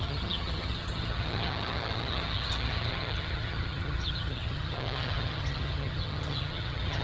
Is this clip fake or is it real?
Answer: fake